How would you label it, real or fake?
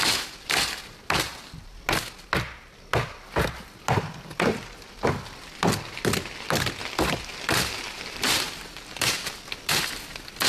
real